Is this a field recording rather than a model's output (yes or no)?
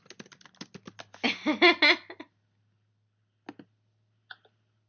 yes